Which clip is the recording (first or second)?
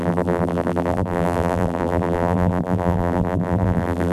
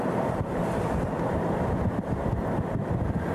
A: second